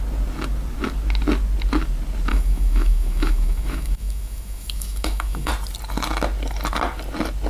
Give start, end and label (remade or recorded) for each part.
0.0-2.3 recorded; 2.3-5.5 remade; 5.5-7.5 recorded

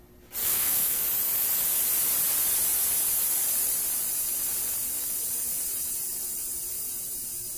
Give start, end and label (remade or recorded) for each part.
0.0-0.4 recorded; 0.4-1.0 remade; 1.0-7.6 recorded

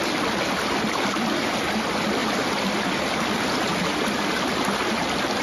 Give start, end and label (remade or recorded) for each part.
0.0-2.2 remade; 2.2-5.4 recorded

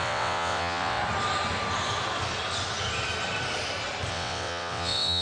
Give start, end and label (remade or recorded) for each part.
0.0-1.0 remade; 1.0-4.1 recorded; 4.1-5.2 remade

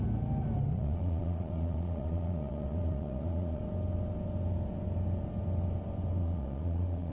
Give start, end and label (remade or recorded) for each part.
0.0-0.7 recorded; 0.7-3.6 remade; 3.6-6.2 recorded; 6.2-7.1 remade

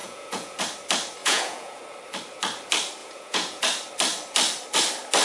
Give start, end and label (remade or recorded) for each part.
0.0-0.6 remade; 0.6-1.2 recorded; 1.2-1.8 remade; 1.8-3.0 recorded; 3.0-3.6 remade; 3.6-5.2 recorded